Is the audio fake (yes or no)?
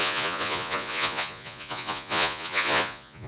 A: yes